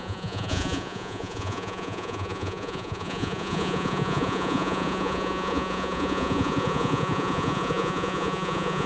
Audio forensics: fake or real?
fake